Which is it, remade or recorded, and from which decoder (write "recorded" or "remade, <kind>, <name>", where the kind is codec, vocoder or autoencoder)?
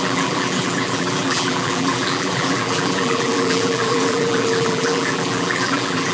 remade, vocoder, BigVGAN v2